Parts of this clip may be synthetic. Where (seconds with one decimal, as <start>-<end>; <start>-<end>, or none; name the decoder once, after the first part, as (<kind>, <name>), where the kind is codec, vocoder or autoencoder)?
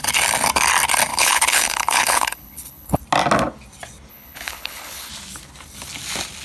1.1-3.0 (codec, HILCodec); 4.1-5.1